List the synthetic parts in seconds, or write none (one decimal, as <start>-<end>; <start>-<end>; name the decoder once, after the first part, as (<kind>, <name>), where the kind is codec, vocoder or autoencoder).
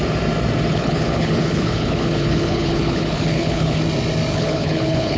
0.7-3.8 (codec, HILCodec); 4.3-5.2